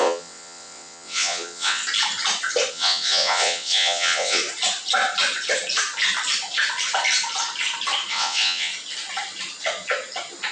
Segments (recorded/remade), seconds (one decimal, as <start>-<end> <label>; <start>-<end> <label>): 0.0-1.8 remade; 1.8-2.7 recorded; 2.7-4.4 remade; 4.4-8.1 recorded; 8.1-8.7 remade; 8.7-10.5 recorded